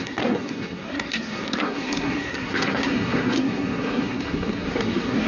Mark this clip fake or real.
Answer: fake